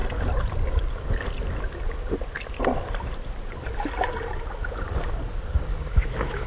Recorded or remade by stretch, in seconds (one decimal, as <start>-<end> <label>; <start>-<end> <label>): 0.0-5.7 recorded; 5.7-6.5 remade